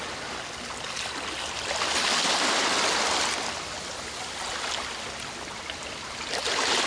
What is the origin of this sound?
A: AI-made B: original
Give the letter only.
B